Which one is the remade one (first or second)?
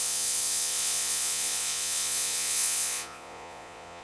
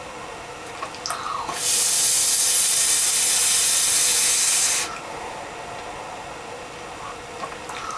first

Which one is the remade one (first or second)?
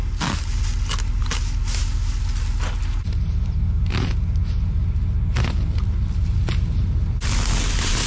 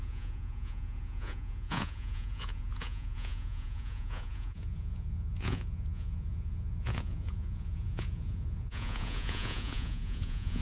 second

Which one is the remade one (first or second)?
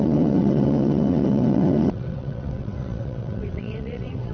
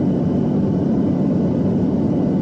first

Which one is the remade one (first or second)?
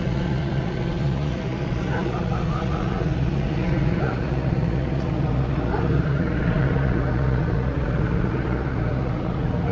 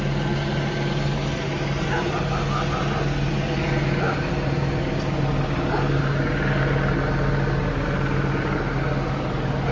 first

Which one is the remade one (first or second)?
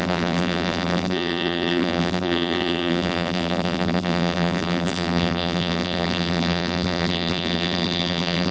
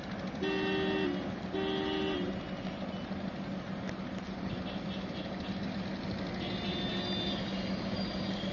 first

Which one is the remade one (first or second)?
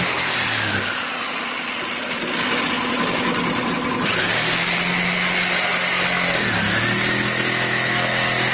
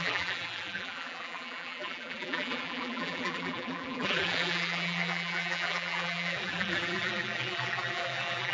second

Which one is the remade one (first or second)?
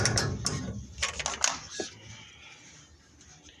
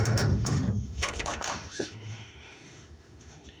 second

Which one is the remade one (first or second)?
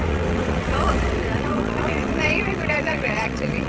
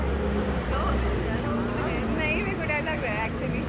first